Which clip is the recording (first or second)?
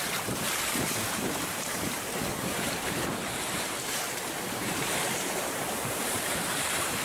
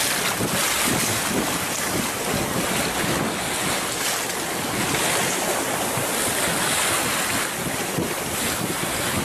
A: second